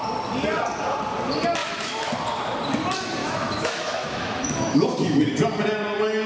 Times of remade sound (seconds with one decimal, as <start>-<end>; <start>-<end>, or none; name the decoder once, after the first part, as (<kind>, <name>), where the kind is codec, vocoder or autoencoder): 1.6-2.1 (autoencoder, DAC-VAE); 3.2-5.3

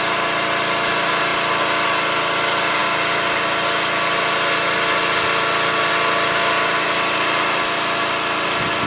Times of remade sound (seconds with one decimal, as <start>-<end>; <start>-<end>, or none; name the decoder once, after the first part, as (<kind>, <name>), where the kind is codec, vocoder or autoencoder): none